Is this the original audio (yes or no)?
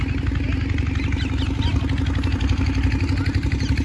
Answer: yes